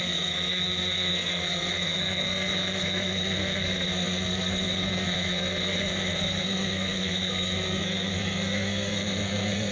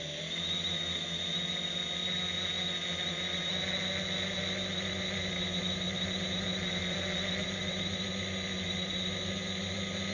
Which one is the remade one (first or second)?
first